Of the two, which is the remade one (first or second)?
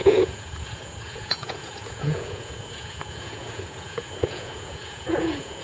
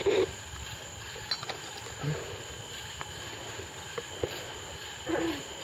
first